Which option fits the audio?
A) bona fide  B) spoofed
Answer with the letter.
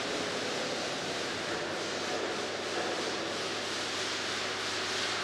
A